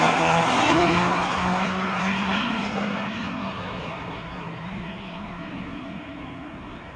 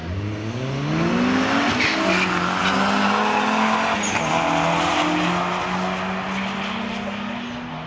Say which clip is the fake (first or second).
first